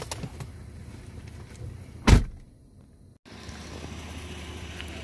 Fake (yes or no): no